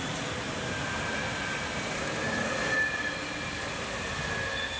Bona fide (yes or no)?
yes